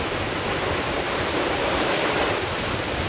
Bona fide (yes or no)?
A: yes